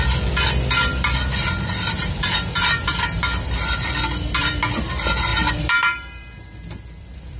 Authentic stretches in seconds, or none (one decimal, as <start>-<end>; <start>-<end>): 0.0-0.9; 4.6-5.3

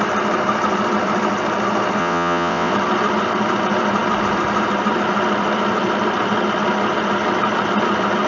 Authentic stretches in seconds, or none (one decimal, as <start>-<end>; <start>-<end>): 0.0-2.0; 2.7-8.3